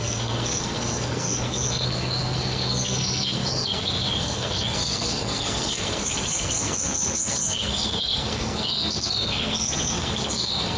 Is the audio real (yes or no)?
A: no